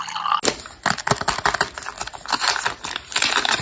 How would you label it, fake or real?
real